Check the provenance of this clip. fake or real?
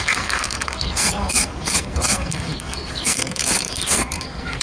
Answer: fake